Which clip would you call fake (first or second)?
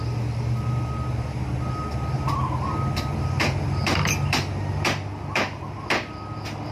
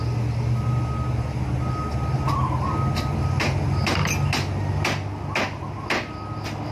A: first